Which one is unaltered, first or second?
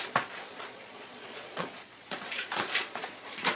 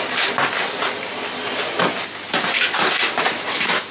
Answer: second